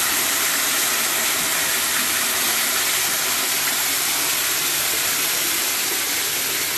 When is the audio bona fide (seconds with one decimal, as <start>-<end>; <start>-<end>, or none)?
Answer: 0.0-1.5; 5.6-6.8